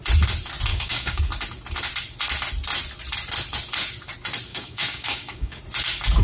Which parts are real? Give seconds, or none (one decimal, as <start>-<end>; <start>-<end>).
0.0-0.7; 1.2-4.5; 5.6-6.2